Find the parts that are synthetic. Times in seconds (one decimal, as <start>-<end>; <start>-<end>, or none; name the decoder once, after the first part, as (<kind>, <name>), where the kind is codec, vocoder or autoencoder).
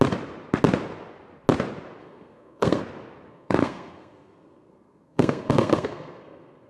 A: 2.0-2.8 (codec, SNAC); 3.3-6.7